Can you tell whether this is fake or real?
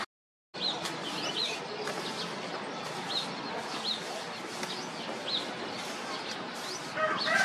real